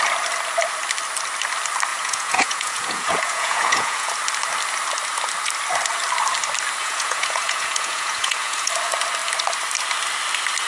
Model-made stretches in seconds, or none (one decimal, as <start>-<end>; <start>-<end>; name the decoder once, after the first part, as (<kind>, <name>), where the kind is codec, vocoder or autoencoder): 1.9-4.1 (vocoder, Vocos); 6.8-8.7